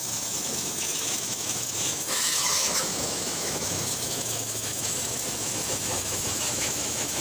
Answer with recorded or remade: remade